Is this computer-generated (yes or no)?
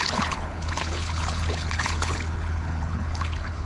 yes